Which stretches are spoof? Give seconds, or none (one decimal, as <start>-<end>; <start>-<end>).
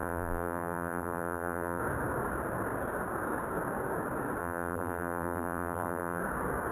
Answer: 0.0-1.8; 4.4-6.2